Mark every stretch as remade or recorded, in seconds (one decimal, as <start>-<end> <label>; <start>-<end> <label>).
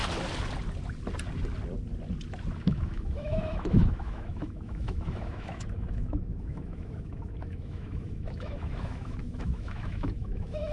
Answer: 0.0-2.6 recorded; 2.6-10.7 remade